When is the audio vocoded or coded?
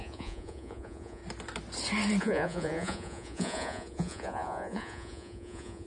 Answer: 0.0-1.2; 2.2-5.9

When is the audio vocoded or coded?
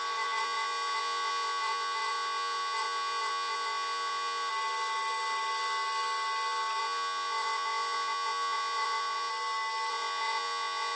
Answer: 0.0-4.5; 6.8-9.3; 9.9-11.0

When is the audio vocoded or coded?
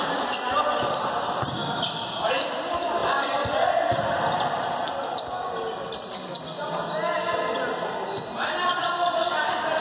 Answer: none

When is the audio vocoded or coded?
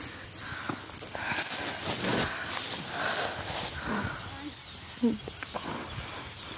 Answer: none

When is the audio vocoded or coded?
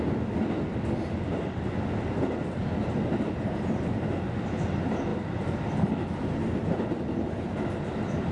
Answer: none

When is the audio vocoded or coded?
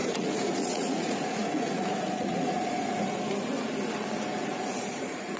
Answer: 0.0-3.2; 4.3-5.4